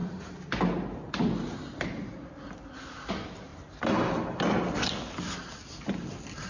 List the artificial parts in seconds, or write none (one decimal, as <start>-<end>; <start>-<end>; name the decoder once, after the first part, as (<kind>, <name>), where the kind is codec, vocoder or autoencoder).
none